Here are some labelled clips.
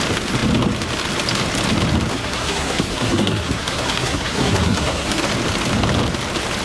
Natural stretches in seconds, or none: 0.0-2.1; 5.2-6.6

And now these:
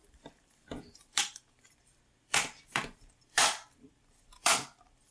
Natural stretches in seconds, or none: none

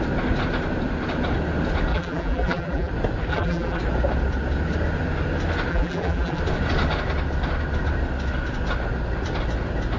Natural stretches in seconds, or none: 0.0-1.9; 2.9-3.3; 3.8-5.7; 6.4-10.0

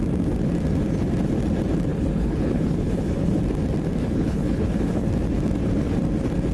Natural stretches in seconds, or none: 0.0-1.9; 3.4-4.0; 5.1-6.5

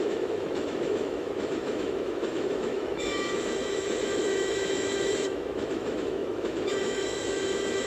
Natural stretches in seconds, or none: none